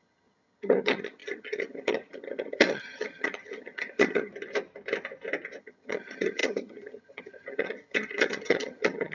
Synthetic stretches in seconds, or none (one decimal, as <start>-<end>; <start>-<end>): 0.0-4.3; 5.6-9.1